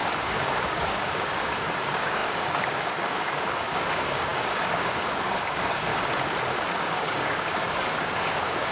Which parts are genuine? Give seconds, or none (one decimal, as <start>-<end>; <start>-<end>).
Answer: 5.9-6.8